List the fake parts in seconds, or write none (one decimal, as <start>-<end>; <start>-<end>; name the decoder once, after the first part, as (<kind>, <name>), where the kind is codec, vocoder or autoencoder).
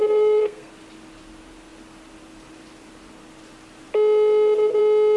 0.0-0.7 (codec, SNAC)